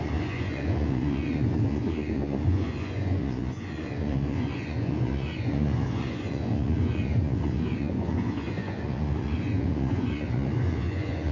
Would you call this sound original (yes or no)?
no